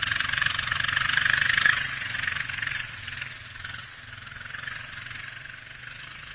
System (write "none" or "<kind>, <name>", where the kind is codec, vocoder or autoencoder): vocoder, Vocos